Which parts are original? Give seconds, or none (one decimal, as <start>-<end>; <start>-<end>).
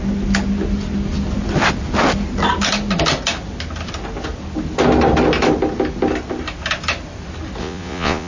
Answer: 0.0-7.6